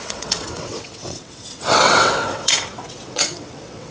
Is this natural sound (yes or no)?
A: no